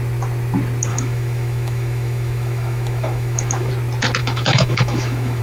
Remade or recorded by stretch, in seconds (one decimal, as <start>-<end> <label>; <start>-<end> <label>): 0.0-0.9 recorded; 0.9-3.7 remade; 3.7-4.2 recorded; 4.2-5.4 remade